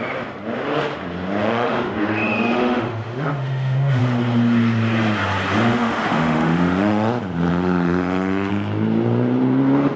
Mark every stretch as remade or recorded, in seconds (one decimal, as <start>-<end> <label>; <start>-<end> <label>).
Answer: 0.0-1.4 recorded; 1.4-4.0 remade; 4.0-5.7 recorded; 5.7-7.1 remade; 7.1-7.5 recorded; 7.5-8.5 remade; 8.5-10.0 recorded